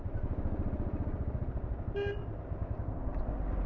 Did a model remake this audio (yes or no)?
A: no